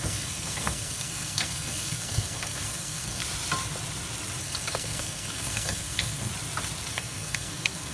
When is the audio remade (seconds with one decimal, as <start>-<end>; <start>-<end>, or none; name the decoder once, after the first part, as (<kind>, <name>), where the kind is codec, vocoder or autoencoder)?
0.0-3.2 (codec, SNAC); 4.4-6.3; 6.9-7.9